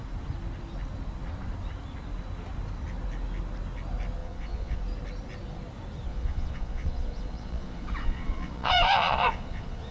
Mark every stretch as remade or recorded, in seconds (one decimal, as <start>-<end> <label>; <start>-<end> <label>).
0.0-4.2 recorded; 4.2-4.8 remade; 4.8-6.1 recorded; 6.1-9.9 remade

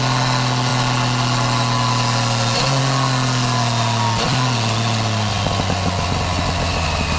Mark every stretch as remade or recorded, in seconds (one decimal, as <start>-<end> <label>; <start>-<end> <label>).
0.0-7.2 recorded

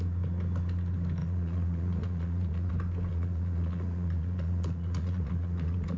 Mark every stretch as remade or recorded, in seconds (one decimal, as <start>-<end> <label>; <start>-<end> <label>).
0.0-1.2 recorded; 1.2-2.7 remade; 2.7-3.1 recorded; 3.1-6.0 remade